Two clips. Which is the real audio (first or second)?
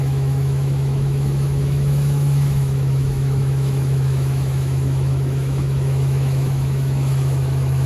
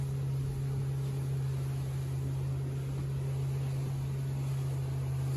second